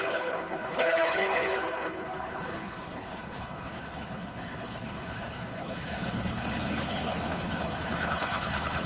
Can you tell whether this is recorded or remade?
remade